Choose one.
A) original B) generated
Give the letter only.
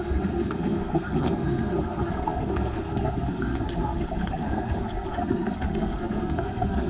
B